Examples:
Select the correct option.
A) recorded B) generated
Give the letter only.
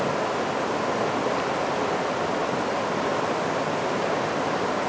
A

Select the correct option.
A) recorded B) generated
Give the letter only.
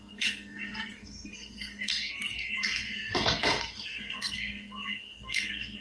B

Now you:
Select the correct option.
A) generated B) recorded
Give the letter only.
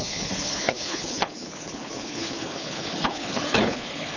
A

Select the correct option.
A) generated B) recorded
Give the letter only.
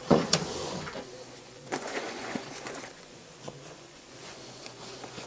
A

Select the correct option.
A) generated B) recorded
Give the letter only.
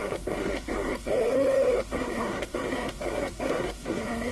A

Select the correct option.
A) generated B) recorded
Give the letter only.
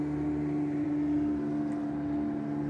B